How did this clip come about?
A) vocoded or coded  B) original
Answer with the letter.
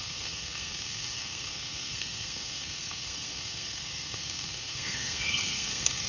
A